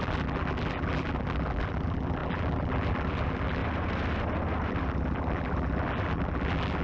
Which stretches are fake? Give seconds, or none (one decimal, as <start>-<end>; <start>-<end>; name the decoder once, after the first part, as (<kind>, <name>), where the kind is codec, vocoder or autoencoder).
0.0-3.6 (vocoder, BigVGAN v2); 4.7-6.8